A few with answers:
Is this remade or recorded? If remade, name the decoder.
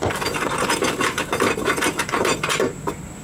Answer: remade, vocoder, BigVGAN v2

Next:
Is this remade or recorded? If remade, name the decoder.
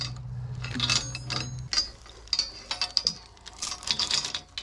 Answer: recorded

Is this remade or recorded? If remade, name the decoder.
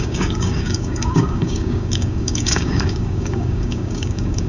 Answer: remade, codec, DAC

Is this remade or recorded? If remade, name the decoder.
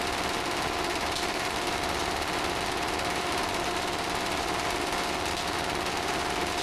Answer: recorded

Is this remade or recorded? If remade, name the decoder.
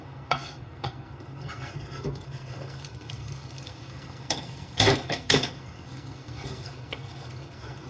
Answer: remade, codec, SNAC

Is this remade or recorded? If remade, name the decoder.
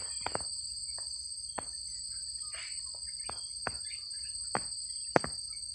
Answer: recorded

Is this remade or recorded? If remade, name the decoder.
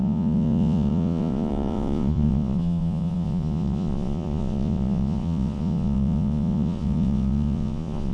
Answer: remade, vocoder, Vocos